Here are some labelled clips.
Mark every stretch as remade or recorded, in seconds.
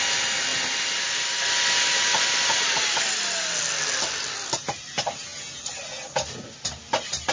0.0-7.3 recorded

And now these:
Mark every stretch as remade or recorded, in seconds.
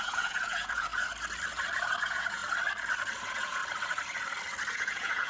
0.0-0.9 remade; 0.9-2.0 recorded; 2.0-2.4 remade; 2.4-3.2 recorded; 3.2-3.6 remade; 3.6-4.7 recorded; 4.7-5.3 remade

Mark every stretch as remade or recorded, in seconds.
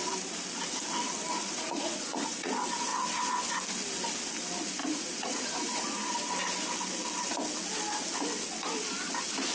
0.0-1.4 recorded; 1.4-2.5 remade; 2.5-4.8 recorded; 4.8-6.1 remade; 6.1-9.5 recorded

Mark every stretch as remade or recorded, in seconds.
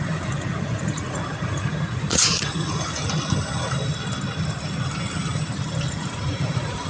0.0-3.0 remade; 3.0-5.9 recorded; 5.9-6.9 remade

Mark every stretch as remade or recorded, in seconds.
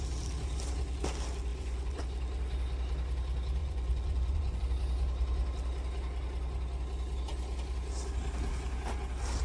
0.0-1.5 recorded; 1.5-2.0 remade; 2.0-3.6 recorded; 3.6-4.6 remade; 4.6-9.4 recorded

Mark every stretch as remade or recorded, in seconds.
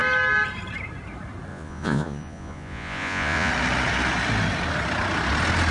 0.0-1.5 recorded; 1.5-3.5 remade; 3.5-5.7 recorded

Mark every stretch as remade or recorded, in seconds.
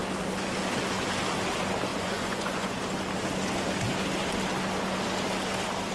0.0-1.9 recorded; 1.9-2.8 remade; 2.8-5.9 recorded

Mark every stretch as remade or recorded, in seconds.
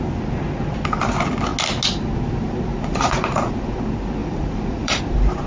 0.0-2.7 recorded; 2.7-3.5 remade; 3.5-4.2 recorded; 4.2-5.0 remade; 5.0-5.5 recorded